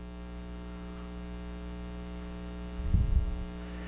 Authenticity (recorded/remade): recorded